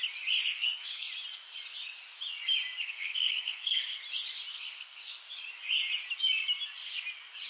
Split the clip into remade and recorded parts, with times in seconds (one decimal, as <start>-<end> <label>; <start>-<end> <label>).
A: 0.0-0.4 recorded; 0.4-1.1 remade; 1.1-2.8 recorded; 2.8-3.8 remade; 3.8-4.5 recorded; 4.5-5.1 remade; 5.1-7.5 recorded